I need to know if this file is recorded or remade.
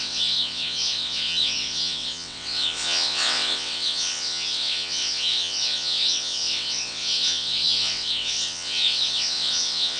remade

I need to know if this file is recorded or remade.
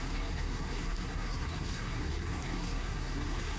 remade